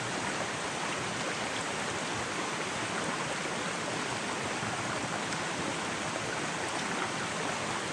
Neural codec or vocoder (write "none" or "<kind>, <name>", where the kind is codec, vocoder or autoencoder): none